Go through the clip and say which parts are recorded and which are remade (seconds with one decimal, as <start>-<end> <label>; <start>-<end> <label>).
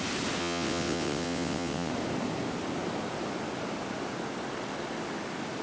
0.0-0.4 recorded; 0.4-1.9 remade; 1.9-5.6 recorded